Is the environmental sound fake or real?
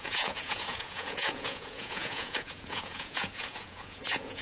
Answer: fake